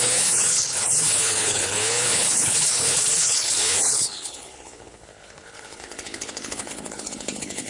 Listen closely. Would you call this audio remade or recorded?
remade